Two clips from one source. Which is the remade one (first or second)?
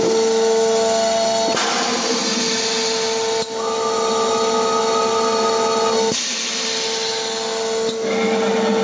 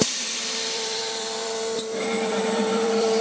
second